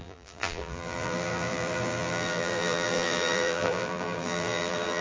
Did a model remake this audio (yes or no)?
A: yes